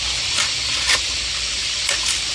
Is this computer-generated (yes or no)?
no